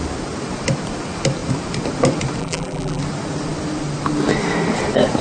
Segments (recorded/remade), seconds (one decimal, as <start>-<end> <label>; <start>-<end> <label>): 0.0-2.4 recorded; 2.4-3.0 remade; 3.0-5.2 recorded